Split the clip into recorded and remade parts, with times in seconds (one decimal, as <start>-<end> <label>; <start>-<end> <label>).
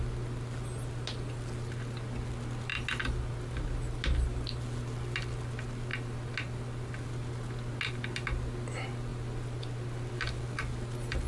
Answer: 0.0-11.3 recorded